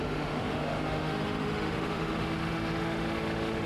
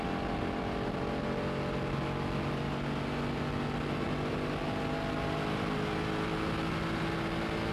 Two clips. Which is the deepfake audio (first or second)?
first